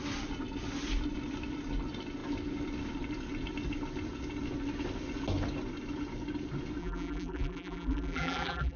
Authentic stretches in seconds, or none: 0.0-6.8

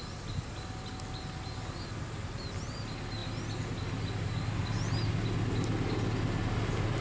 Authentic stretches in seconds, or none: 0.0-7.0